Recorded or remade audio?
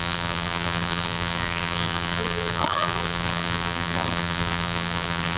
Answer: remade